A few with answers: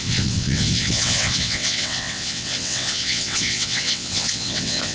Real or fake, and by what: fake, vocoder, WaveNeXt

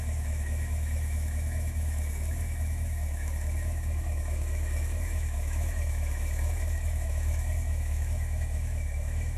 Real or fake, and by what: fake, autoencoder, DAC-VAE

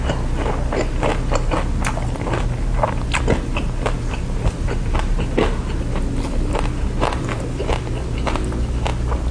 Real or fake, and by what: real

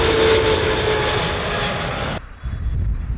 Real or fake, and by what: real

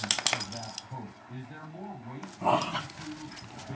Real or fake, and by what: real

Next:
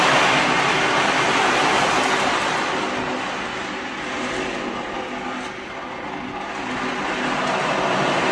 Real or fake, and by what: real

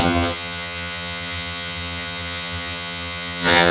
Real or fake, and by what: fake, vocoder, HiFi-GAN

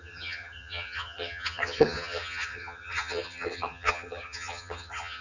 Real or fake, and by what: fake, vocoder, HiFi-GAN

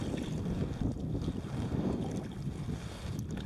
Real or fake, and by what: real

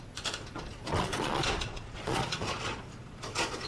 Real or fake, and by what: fake, vocoder, Vocos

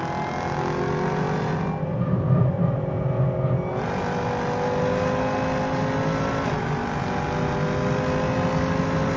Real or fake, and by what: real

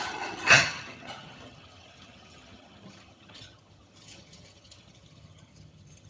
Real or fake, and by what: fake, vocoder, HiFi-GAN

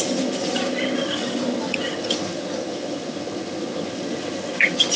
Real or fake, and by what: fake, vocoder, HiFi-GAN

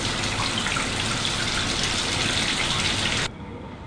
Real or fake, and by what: real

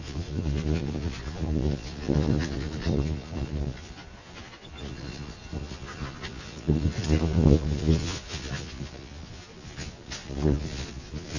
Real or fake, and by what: fake, vocoder, Vocos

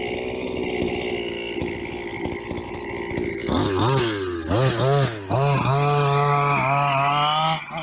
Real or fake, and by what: real